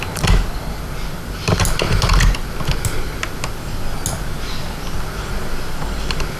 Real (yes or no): yes